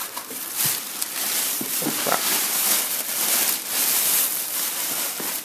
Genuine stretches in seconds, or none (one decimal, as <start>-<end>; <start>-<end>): 2.6-5.4